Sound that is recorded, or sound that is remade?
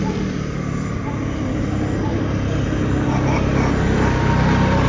recorded